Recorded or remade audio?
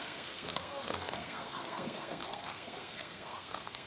remade